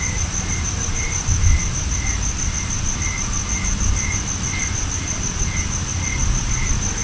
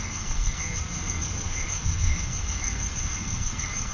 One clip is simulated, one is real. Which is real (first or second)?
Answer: first